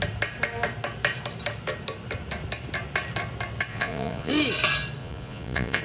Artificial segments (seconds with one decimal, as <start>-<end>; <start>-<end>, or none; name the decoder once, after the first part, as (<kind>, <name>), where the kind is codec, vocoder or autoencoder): 3.7-4.3 (vocoder, Vocos); 5.0-5.8